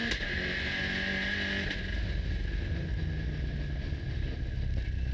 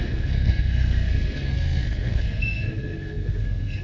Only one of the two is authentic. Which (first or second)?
first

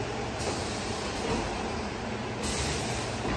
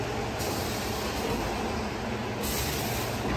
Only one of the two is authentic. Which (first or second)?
second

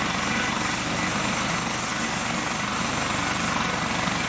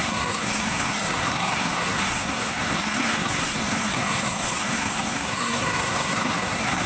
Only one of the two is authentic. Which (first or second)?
first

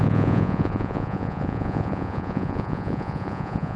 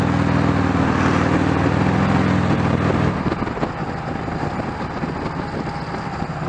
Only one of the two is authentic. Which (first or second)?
second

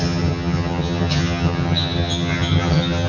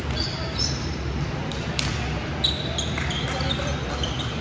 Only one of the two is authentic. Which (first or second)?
second